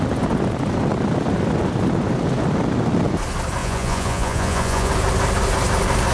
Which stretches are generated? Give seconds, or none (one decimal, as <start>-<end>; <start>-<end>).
3.6-4.9